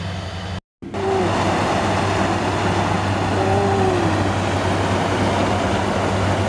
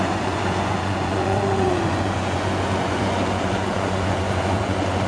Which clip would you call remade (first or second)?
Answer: second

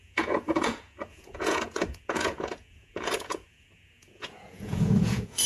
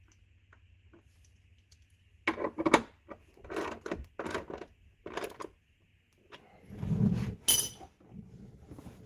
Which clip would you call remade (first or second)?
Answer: first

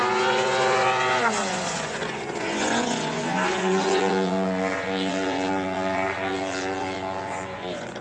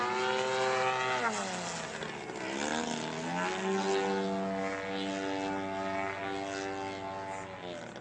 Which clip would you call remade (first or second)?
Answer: first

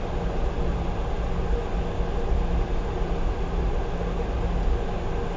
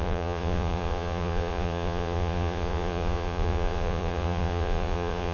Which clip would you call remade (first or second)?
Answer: second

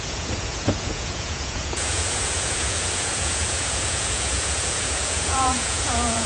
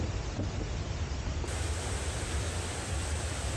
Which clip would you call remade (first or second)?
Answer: first